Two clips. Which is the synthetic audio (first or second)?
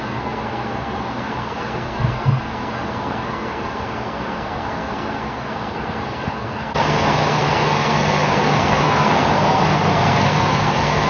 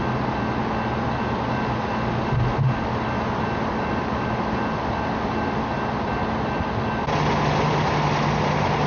first